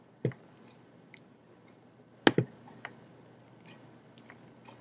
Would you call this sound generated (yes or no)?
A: no